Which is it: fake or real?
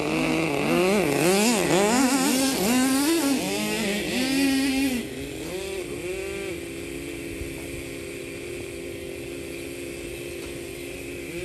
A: real